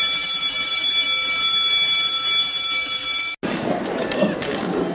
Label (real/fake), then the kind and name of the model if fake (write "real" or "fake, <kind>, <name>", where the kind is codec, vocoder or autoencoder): real